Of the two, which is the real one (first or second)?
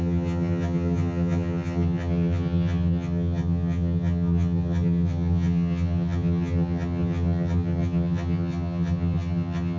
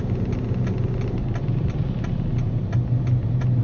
second